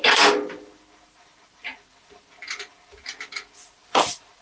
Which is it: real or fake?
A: real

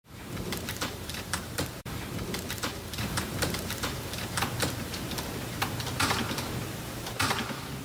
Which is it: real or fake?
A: fake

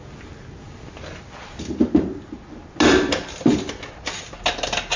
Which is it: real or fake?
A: real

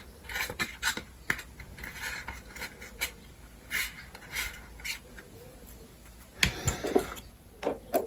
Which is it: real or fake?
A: real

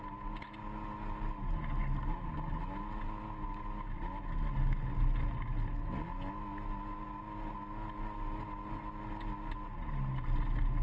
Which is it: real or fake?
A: real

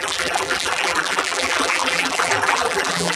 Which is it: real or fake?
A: fake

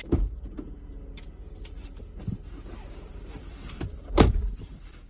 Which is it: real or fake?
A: fake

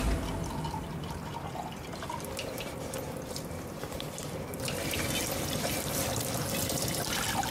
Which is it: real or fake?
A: fake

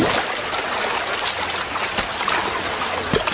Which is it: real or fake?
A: real